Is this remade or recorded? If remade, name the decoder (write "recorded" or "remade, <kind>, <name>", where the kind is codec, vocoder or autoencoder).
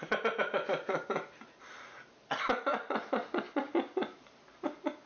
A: recorded